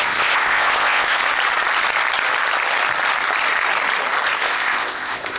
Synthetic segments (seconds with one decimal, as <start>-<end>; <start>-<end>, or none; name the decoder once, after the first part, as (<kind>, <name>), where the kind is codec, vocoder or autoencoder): 0.0-1.2 (codec, ZipCodec); 4.4-5.4